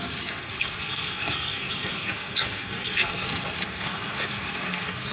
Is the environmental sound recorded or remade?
remade